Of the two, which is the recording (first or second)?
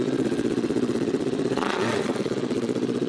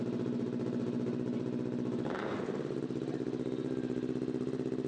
second